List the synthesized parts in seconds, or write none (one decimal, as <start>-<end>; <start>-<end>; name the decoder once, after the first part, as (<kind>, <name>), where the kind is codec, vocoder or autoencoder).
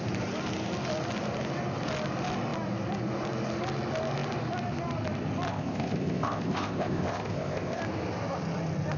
5.5-7.8 (codec, ZipCodec)